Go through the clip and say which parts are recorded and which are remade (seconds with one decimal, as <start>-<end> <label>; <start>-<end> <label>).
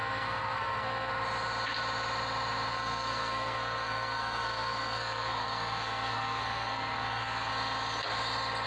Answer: 0.0-1.1 remade; 1.1-2.7 recorded; 2.7-7.5 remade; 7.5-8.7 recorded